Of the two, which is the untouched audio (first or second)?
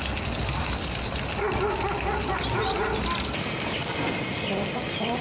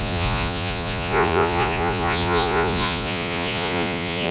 first